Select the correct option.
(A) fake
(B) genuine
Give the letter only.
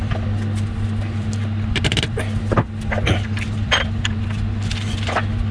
B